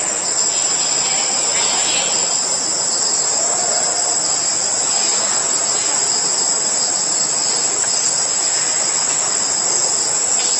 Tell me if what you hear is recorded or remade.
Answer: recorded